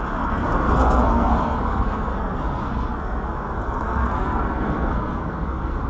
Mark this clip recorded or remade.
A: remade